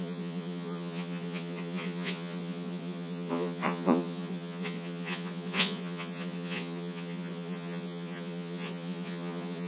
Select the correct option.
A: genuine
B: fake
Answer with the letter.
B